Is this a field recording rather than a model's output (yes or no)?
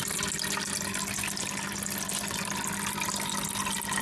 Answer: yes